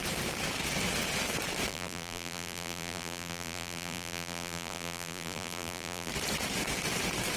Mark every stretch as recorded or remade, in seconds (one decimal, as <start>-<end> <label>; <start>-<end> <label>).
0.0-1.7 recorded; 1.7-6.1 remade; 6.1-7.4 recorded